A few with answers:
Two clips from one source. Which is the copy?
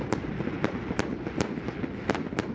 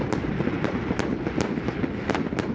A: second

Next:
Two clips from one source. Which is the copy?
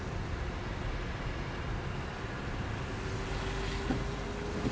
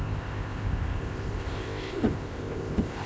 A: second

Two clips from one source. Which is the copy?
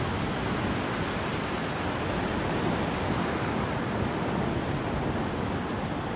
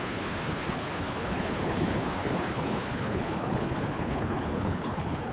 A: second